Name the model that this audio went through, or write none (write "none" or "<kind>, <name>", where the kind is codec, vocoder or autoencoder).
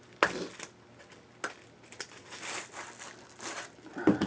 none